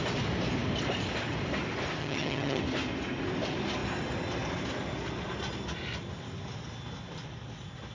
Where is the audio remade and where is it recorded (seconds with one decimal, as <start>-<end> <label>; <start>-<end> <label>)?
0.0-2.0 recorded; 2.0-2.6 remade; 2.6-7.9 recorded